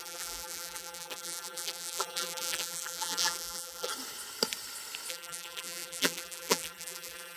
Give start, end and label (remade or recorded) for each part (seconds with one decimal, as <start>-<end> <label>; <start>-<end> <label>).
0.0-3.9 remade; 3.9-5.1 recorded; 5.1-7.4 remade